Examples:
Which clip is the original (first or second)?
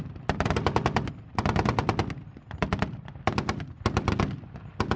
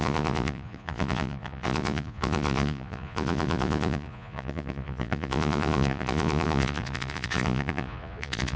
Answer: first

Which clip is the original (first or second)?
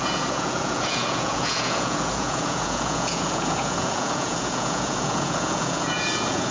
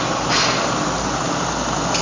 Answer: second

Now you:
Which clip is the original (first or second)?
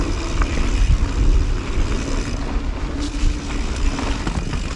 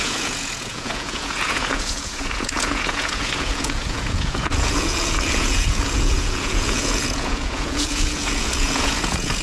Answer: first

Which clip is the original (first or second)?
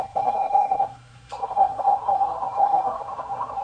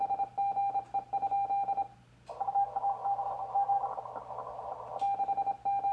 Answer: second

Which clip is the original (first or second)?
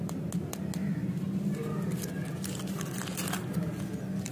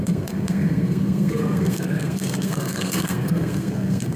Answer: first